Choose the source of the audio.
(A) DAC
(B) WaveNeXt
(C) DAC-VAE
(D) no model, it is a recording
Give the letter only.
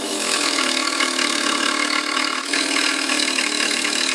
C